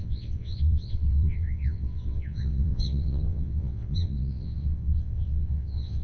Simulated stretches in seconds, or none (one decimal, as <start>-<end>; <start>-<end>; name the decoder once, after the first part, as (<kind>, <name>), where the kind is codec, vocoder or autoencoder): 0.0-6.0 (vocoder, WaveNeXt)